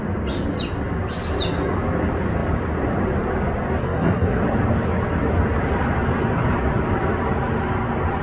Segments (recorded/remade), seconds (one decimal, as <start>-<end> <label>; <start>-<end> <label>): 0.0-3.8 recorded; 3.8-4.4 remade; 4.4-8.2 recorded